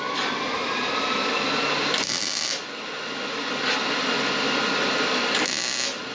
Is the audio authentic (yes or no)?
yes